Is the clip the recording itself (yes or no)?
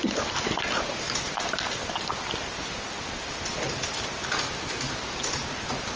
yes